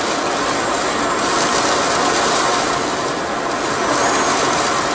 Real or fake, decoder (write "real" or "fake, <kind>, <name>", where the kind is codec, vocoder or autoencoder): real